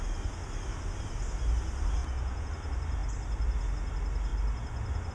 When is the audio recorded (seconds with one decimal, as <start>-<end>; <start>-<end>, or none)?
0.0-2.0; 2.5-5.1